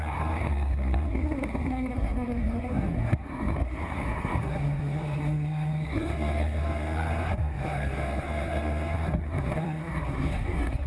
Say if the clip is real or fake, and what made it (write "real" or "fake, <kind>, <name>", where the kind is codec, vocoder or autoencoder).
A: fake, codec, SNAC